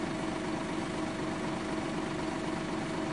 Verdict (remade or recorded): recorded